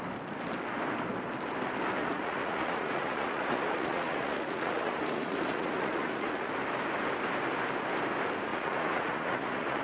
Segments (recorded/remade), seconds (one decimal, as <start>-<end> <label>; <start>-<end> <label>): 0.0-2.0 recorded; 2.0-6.5 remade; 6.5-8.5 recorded; 8.5-9.8 remade